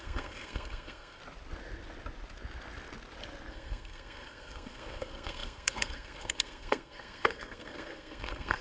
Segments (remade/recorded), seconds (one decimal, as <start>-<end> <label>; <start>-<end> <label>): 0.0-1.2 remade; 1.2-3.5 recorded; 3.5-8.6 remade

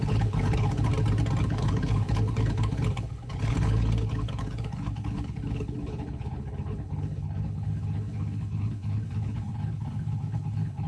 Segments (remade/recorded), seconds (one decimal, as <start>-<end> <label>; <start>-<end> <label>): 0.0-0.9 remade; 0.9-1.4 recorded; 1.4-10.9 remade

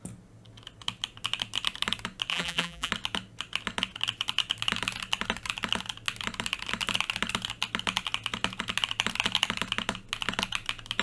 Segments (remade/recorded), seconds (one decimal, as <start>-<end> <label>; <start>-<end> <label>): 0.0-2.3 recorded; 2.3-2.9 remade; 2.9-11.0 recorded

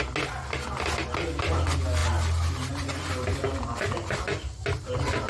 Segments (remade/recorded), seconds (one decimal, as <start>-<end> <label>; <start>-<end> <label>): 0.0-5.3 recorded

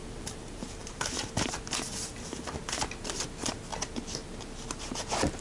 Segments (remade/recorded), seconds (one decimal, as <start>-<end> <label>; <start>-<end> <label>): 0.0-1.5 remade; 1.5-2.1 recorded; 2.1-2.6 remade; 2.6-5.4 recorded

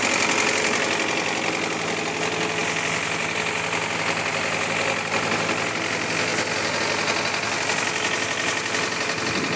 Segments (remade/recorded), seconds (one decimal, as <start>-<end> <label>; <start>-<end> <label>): 0.0-9.6 recorded

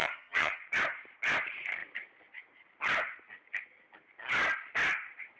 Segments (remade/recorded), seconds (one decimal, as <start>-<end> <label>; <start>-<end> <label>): 0.0-0.6 remade; 0.6-5.4 recorded